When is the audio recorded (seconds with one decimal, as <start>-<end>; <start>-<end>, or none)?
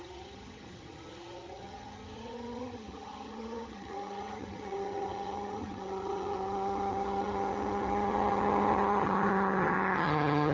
none